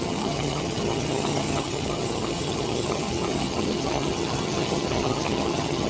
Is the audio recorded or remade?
remade